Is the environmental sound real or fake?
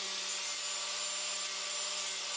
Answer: real